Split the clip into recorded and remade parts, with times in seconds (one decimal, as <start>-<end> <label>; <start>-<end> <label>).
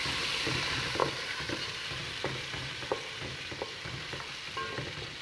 0.0-5.2 recorded